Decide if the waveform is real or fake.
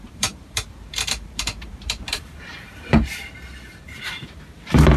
fake